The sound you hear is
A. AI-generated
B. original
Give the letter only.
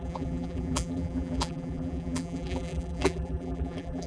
A